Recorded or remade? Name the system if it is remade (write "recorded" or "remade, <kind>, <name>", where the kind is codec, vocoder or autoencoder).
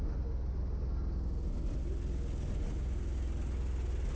recorded